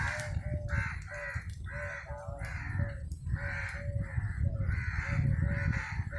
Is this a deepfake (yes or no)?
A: no